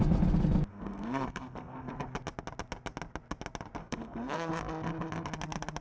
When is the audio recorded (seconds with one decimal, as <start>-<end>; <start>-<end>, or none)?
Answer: 0.0-0.7; 1.9-3.8; 4.5-5.8

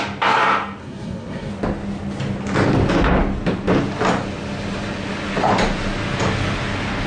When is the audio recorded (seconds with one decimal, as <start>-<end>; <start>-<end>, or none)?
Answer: 0.0-0.8; 1.5-7.1

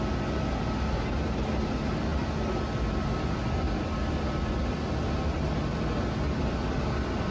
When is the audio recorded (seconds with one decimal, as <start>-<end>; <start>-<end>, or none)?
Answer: 0.0-7.3

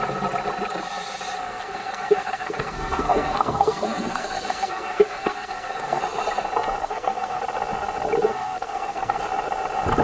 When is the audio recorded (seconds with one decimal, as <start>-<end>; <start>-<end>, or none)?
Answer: 0.0-1.4; 6.0-6.8; 7.4-8.3; 9.2-10.0